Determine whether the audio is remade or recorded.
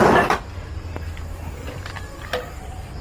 recorded